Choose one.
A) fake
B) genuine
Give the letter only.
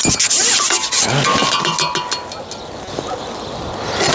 B